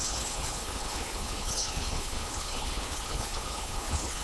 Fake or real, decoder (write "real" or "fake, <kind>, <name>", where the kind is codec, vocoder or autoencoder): fake, codec, HILCodec